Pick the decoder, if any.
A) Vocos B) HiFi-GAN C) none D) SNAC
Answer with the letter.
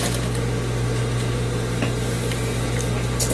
C